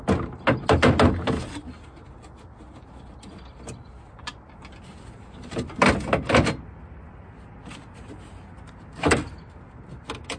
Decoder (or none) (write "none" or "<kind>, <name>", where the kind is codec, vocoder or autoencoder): none